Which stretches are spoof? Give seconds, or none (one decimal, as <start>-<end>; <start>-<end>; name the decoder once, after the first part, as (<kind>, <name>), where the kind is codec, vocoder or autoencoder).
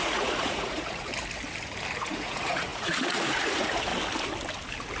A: 0.0-1.1 (vocoder, Vocos); 2.0-3.9